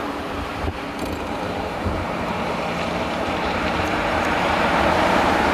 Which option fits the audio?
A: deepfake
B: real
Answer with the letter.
A